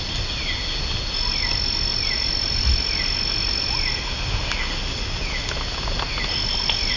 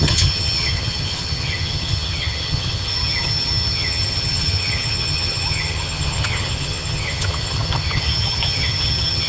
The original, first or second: first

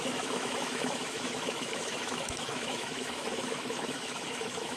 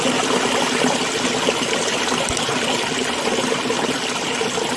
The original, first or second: second